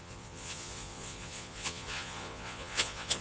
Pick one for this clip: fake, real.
fake